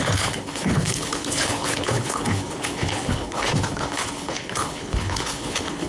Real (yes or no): no